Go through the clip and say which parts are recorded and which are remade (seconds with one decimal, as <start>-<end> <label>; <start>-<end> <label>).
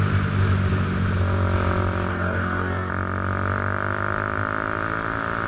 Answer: 0.0-2.1 recorded; 2.1-2.9 remade; 2.9-5.5 recorded